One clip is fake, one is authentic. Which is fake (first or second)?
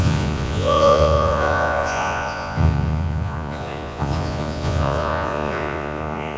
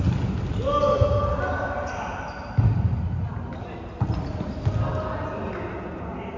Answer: first